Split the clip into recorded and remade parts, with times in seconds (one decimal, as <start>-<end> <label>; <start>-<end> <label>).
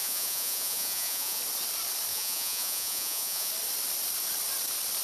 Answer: 0.0-1.4 remade; 1.4-2.1 recorded; 2.1-3.5 remade; 3.5-5.0 recorded